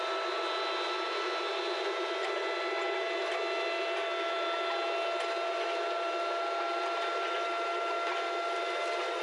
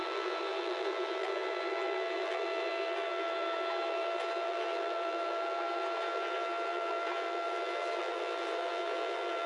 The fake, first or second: second